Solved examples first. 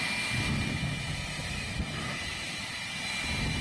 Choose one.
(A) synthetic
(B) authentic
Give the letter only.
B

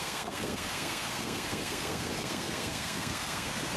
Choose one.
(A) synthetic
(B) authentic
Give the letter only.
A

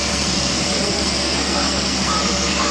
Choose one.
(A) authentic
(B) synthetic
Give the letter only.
B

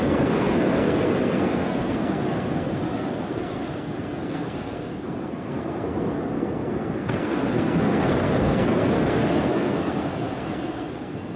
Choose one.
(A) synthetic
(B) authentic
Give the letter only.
A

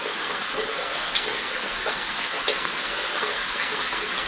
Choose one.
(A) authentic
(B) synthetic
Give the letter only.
B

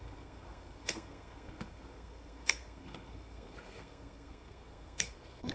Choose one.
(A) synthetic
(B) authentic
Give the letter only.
A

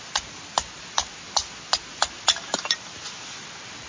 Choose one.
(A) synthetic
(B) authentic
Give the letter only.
B